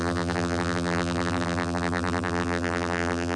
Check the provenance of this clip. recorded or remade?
remade